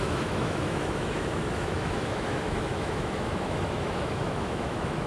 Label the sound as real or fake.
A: fake